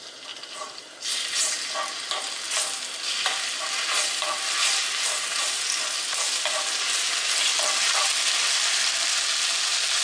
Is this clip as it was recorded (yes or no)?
yes